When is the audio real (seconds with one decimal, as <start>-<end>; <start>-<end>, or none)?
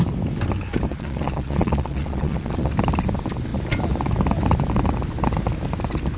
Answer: 0.0-0.9; 2.7-6.2